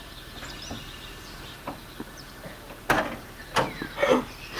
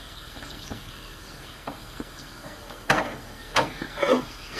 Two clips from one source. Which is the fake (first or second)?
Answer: second